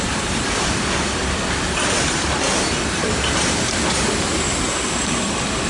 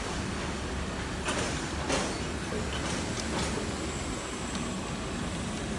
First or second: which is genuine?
second